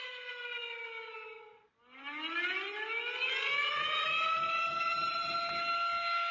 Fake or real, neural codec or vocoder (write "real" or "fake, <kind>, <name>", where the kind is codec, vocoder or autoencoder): real